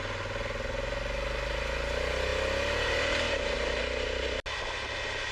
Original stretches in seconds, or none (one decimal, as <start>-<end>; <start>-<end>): 0.0-5.3

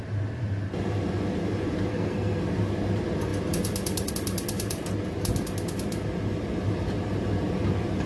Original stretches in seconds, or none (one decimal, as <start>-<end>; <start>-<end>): 0.0-1.9; 2.4-8.1

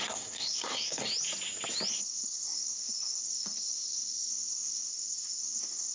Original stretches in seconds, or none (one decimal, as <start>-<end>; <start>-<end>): 1.1-1.9

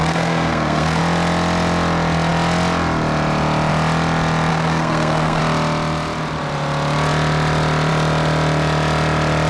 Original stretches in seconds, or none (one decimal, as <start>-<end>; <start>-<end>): 1.0-4.5; 5.4-9.5

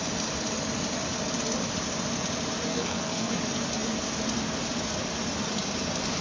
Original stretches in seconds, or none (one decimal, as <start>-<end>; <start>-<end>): 0.0-2.7; 3.3-6.2

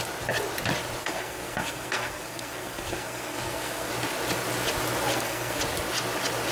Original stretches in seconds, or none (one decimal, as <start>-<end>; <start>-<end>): 0.0-1.0; 3.9-5.1; 5.6-6.5

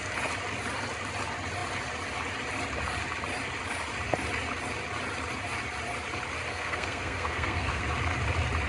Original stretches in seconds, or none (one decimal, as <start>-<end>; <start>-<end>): 0.0-6.5; 7.8-8.7

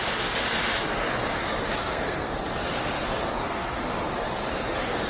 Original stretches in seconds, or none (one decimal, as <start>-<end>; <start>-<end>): 0.0-1.8; 2.4-3.4; 3.9-5.1